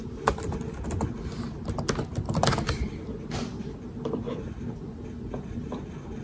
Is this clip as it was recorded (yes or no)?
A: yes